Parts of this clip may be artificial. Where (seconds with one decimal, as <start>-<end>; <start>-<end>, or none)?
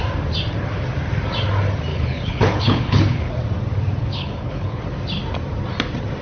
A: 1.9-3.3; 4.0-4.8